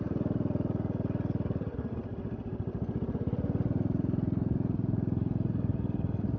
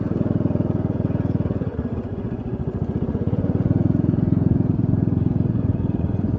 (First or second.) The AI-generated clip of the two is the second